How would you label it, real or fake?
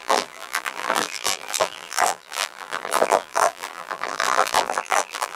fake